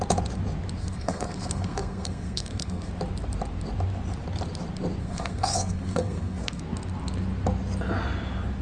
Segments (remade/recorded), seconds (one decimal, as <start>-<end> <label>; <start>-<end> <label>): 0.0-0.8 recorded; 0.8-2.9 remade; 2.9-5.0 recorded; 5.0-6.6 remade; 6.6-8.6 recorded